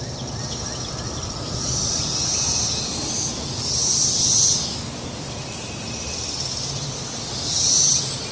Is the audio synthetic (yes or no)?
yes